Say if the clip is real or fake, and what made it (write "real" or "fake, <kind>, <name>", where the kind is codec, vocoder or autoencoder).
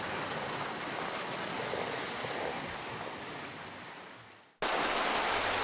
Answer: real